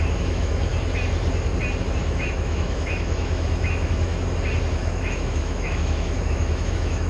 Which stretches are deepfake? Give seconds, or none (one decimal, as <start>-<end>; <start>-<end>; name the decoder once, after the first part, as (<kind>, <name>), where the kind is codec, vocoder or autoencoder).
0.0-0.7 (autoencoder, DAC-VAE); 2.0-4.1; 4.7-7.1